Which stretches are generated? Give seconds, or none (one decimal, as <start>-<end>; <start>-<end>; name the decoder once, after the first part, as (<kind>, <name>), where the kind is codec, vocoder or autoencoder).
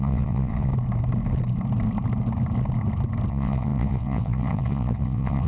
0.0-0.7 (vocoder, WaveNeXt); 3.3-5.5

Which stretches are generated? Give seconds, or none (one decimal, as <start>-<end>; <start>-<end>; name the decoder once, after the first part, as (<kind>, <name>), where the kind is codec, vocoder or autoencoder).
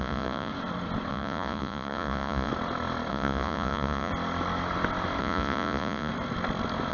0.0-0.5 (vocoder, Vocos); 1.1-2.5; 3.1-4.1; 5.2-6.1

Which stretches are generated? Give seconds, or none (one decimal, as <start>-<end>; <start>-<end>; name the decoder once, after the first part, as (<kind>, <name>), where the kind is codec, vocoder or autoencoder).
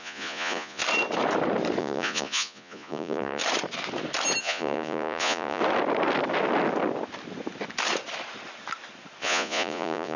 0.0-0.8 (vocoder, Vocos); 1.8-3.4; 4.4-5.6; 9.2-10.2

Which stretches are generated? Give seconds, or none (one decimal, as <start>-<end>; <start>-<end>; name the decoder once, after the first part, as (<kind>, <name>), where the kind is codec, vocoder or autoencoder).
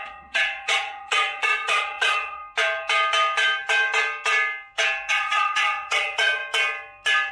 0.0-2.4 (vocoder, Vocos); 5.1-6.4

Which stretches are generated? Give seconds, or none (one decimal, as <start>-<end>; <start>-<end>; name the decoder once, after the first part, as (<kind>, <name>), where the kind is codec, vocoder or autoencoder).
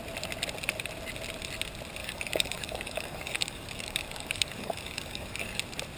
2.0-5.6 (codec, DAC)